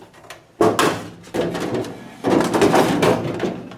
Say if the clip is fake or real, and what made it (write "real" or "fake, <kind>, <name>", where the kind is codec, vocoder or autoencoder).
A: real